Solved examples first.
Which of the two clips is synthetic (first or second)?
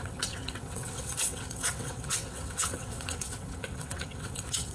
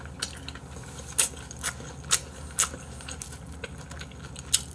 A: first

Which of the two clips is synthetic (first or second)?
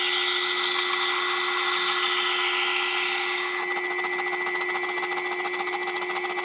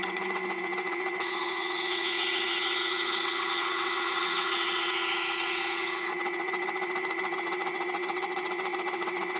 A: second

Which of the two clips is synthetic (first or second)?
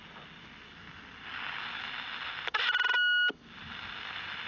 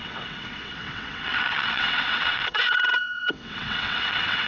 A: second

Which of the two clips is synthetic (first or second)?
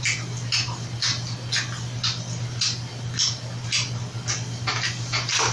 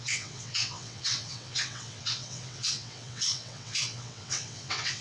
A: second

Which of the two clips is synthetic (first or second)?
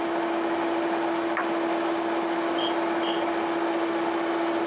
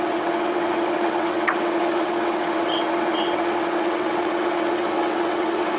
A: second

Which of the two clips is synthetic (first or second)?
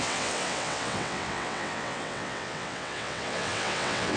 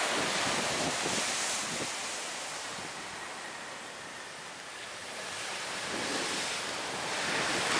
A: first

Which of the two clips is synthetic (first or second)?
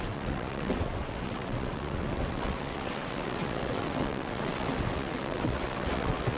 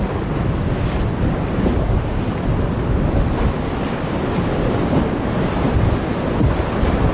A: first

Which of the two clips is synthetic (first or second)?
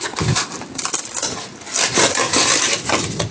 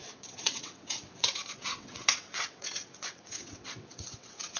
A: second